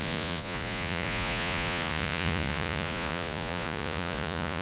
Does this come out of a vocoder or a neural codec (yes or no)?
yes